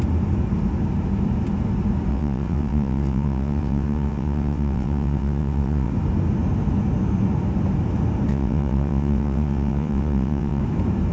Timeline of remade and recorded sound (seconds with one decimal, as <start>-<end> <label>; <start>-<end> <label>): 0.0-2.1 recorded; 2.1-5.9 remade; 5.9-8.3 recorded; 8.3-10.6 remade; 10.6-11.1 recorded